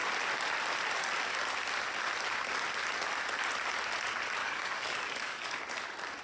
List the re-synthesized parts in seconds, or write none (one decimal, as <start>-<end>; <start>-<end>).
4.4-5.6